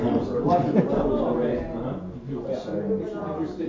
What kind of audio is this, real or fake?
real